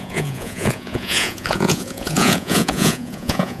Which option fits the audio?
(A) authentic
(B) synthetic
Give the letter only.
B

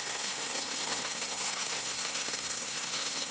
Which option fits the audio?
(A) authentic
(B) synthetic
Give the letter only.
B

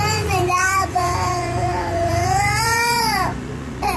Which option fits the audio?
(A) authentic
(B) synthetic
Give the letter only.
B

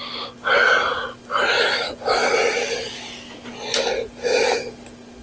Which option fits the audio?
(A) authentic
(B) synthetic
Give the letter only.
A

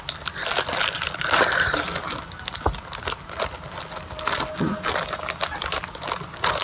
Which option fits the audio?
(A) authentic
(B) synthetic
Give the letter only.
A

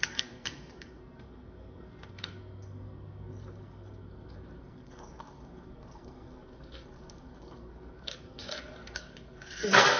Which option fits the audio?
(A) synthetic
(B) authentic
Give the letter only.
A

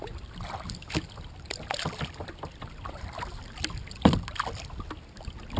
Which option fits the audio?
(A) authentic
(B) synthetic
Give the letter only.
A